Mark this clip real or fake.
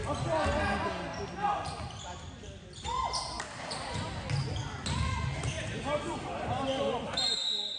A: real